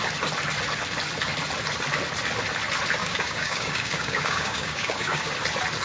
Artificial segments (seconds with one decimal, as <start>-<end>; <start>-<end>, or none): 3.0-5.3